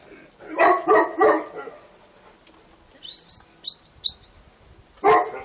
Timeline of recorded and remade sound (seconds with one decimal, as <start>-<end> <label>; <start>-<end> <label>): 0.0-5.4 recorded

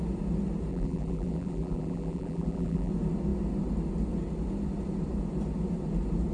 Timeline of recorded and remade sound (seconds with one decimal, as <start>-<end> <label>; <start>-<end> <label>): 0.0-0.7 recorded; 0.7-2.9 remade; 2.9-6.3 recorded

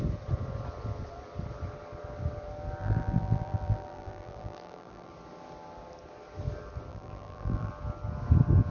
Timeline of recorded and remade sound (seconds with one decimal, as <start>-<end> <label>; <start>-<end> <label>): 0.0-2.8 recorded; 2.8-5.1 remade; 5.1-6.9 recorded; 6.9-7.7 remade; 7.7-8.7 recorded

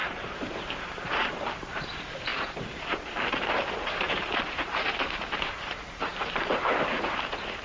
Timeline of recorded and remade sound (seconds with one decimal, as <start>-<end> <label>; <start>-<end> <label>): 0.0-7.6 remade

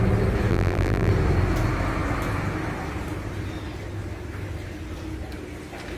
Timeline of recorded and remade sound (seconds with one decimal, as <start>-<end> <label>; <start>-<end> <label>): 0.0-0.5 recorded; 0.5-1.1 remade; 1.1-6.0 recorded

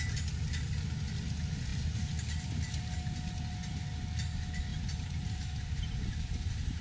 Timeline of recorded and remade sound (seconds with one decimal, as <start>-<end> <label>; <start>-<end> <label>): 0.0-4.7 recorded; 4.7-6.8 remade

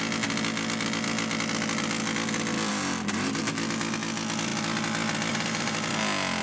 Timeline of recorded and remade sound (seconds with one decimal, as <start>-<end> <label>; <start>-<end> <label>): 0.0-2.7 recorded; 2.7-3.4 remade; 3.4-5.3 recorded; 5.3-5.9 remade; 5.9-6.4 recorded

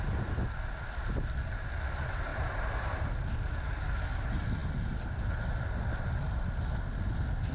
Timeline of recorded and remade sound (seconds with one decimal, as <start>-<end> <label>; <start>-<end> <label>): 0.0-7.5 recorded